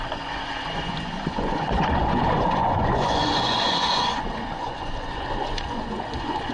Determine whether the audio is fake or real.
fake